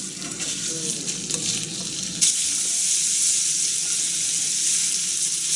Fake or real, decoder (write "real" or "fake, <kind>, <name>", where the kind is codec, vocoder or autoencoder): real